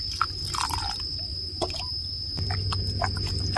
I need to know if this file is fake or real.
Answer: real